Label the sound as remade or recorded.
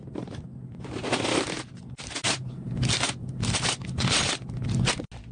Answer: recorded